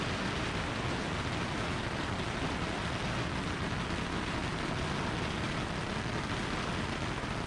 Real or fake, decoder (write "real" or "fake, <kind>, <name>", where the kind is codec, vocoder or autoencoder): real